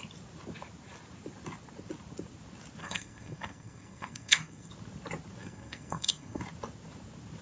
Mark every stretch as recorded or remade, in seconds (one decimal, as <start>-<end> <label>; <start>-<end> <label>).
0.0-2.8 recorded; 2.8-4.7 remade; 4.7-5.4 recorded; 5.4-6.4 remade; 6.4-7.4 recorded